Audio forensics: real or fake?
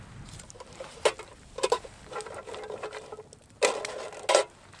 real